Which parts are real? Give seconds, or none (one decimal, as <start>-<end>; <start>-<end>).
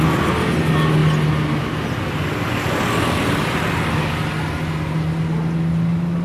0.0-6.2